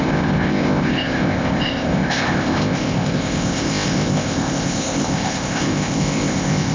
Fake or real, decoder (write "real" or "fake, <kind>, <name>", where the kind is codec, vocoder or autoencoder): fake, codec, ZipCodec